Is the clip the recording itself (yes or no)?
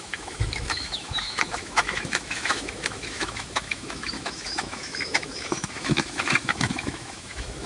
no